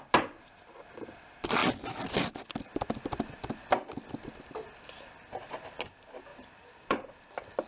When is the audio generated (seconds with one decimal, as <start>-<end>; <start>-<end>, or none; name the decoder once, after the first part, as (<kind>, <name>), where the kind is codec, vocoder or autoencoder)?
6.3-7.2 (vocoder, BigVGAN v2)